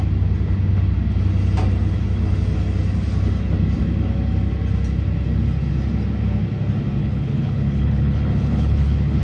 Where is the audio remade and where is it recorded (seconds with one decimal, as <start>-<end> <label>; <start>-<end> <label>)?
0.0-7.0 recorded; 7.0-9.2 remade